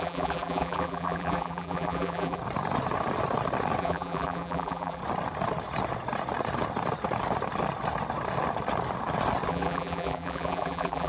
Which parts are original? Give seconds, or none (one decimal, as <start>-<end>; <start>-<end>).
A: 2.4-3.8; 5.0-9.5